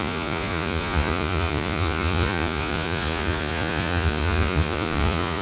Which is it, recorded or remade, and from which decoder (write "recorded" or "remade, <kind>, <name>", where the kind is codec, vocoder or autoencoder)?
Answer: remade, vocoder, Vocos